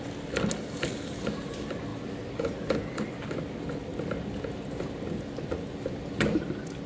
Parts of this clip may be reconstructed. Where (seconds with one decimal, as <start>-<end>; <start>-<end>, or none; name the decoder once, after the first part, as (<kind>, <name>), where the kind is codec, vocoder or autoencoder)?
none